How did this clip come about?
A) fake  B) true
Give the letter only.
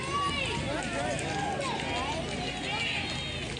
B